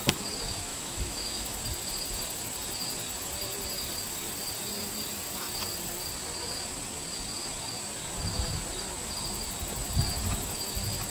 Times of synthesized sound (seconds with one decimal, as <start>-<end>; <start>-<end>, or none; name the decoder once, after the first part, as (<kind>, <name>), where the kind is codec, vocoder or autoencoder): 0.7-1.6 (autoencoder, DAC-VAE)